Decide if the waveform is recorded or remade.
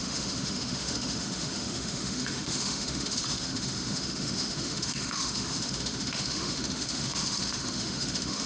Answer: remade